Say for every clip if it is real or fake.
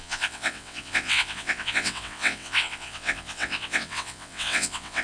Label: fake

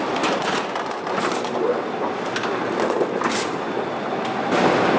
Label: real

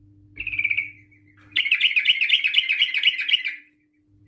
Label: real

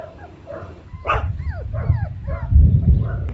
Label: fake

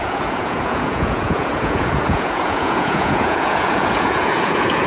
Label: fake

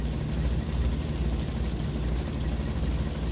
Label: real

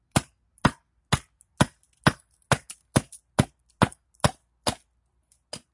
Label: real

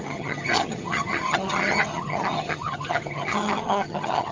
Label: fake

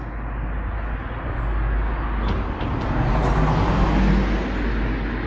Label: real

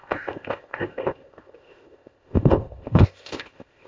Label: fake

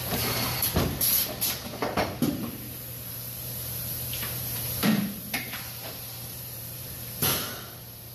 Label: fake